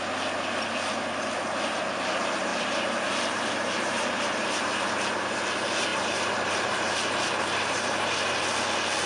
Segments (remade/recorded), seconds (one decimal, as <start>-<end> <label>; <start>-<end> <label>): 0.0-2.5 recorded; 2.5-5.4 remade; 5.4-5.9 recorded; 5.9-8.5 remade; 8.5-9.1 recorded